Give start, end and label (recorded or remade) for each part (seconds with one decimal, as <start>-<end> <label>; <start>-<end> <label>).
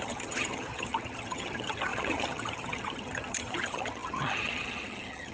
0.0-5.3 remade